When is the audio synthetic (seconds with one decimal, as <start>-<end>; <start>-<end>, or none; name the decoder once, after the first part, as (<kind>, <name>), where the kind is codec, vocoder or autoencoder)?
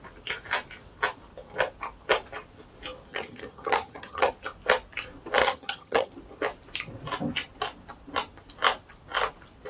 3.1-4.3 (vocoder, HiFi-GAN); 5.4-6.1